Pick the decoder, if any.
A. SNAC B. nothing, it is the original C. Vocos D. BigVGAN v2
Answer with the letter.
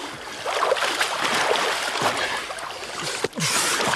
B